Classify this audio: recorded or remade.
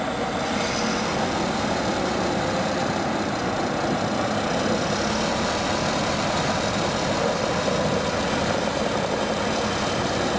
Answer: recorded